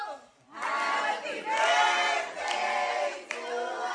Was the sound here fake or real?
real